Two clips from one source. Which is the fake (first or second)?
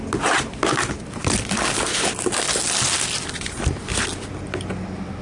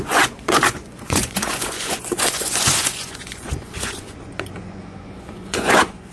second